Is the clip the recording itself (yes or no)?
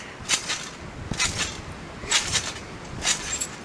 yes